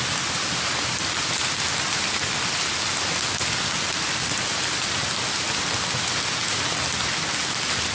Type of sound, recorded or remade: recorded